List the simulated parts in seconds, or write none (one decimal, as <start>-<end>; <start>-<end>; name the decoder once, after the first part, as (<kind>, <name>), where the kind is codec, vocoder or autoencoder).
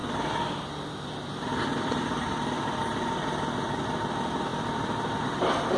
none